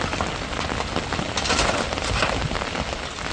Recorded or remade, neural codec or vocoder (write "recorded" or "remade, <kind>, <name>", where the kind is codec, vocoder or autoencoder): recorded